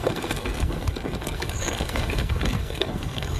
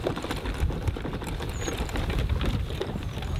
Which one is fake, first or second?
first